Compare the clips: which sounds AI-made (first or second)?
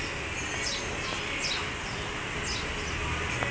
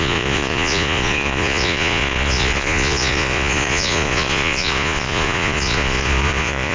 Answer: second